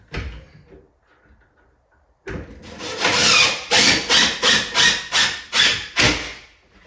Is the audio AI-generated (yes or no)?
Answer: no